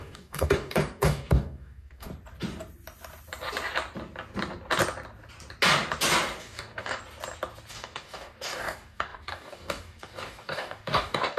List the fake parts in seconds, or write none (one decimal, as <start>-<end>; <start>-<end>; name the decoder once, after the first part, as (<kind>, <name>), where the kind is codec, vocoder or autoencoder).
0.0-2.1 (codec, DAC); 6.4-7.0; 7.7-11.4

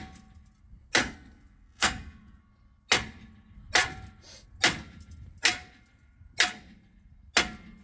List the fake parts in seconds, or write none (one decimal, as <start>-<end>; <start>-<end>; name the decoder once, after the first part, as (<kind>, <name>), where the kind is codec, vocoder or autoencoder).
1.0-2.4 (codec, SNAC)

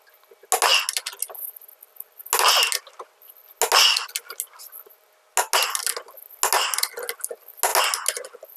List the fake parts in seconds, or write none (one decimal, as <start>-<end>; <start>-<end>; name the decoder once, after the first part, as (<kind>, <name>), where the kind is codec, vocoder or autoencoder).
none

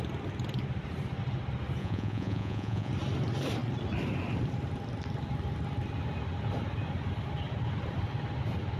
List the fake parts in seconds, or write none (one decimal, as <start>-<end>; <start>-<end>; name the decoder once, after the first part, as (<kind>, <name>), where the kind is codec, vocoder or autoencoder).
1.8-2.9 (vocoder, Vocos)

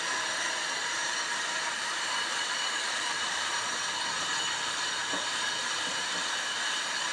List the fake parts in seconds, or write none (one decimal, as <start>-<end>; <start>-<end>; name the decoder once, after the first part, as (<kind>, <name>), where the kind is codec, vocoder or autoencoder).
0.6-3.5 (vocoder, BigVGAN v2)

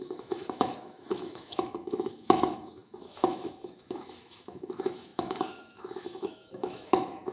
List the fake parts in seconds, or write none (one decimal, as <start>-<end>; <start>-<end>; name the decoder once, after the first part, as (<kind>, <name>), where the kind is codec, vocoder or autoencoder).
0.0-7.3 (autoencoder, DAC-VAE)